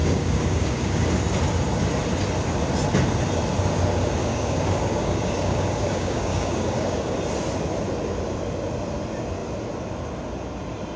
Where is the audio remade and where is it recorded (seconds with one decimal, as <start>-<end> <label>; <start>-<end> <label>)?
0.0-1.1 remade; 1.1-4.2 recorded; 4.2-7.2 remade; 7.2-11.0 recorded